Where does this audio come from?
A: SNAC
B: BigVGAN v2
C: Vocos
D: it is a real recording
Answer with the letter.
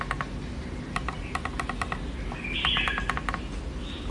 D